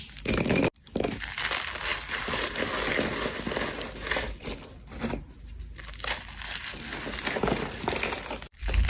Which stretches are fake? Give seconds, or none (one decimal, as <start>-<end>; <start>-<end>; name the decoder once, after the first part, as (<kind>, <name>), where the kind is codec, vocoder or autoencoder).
none